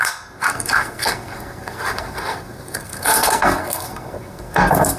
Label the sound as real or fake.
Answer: fake